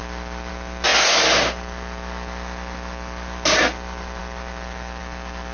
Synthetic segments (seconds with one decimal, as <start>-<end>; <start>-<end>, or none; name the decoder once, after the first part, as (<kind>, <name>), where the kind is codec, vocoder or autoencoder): none

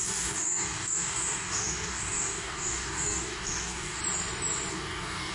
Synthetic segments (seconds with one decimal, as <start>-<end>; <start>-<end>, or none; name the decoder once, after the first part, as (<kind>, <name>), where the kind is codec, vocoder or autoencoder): 0.0-4.0 (codec, DAC); 4.7-5.3

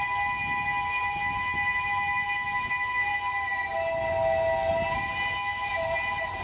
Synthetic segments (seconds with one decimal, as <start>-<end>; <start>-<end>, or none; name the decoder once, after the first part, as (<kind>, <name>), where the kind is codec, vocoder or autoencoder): none